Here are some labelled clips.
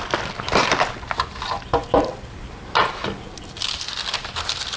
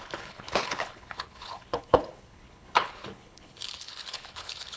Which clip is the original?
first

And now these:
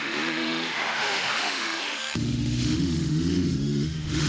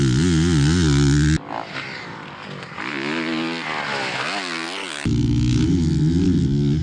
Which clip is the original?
second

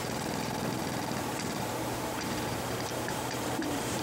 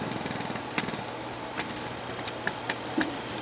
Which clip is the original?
second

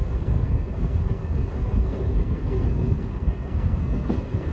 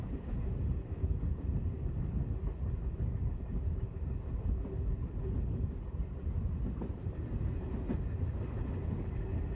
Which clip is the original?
second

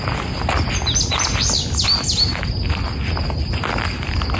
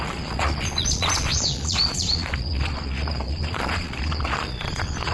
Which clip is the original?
first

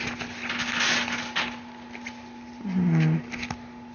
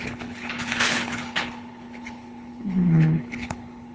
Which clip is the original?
first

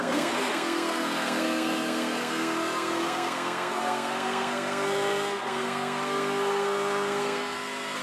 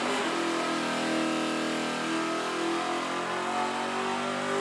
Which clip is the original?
second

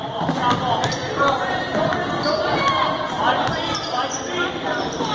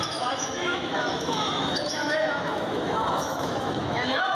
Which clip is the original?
first